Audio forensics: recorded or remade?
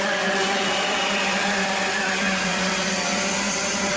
remade